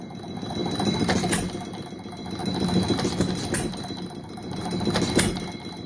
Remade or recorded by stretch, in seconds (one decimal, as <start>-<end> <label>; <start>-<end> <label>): 0.0-5.9 recorded